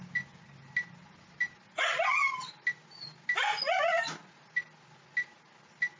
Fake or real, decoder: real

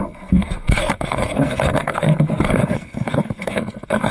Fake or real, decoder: fake, codec, SNAC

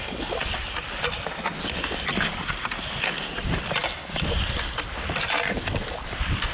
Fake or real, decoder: real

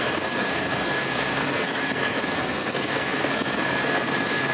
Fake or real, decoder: fake, codec, SNAC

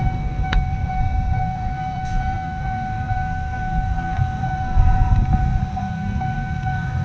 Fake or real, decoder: fake, codec, SNAC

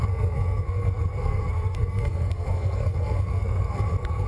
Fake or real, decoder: fake, codec, SNAC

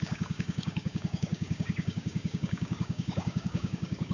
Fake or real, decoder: fake, codec, DAC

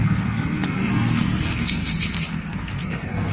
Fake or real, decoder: fake, codec, SNAC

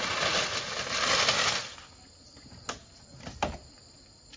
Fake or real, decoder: real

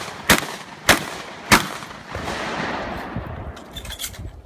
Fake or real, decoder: real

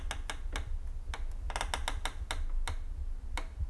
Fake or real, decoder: real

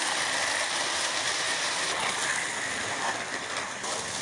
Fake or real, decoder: real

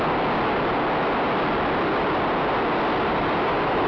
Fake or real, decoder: real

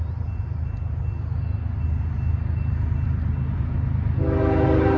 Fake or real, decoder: real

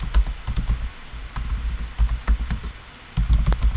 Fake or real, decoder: real